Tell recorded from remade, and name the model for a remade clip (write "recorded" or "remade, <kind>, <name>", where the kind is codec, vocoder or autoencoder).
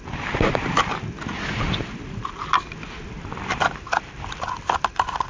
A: recorded